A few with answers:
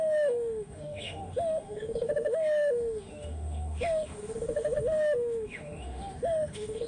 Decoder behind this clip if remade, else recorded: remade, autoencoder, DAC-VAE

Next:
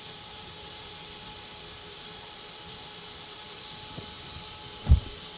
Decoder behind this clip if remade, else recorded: remade, vocoder, BigVGAN v2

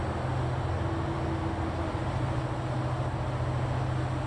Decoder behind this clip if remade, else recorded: recorded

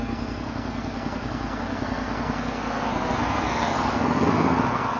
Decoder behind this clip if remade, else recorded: remade, codec, SNAC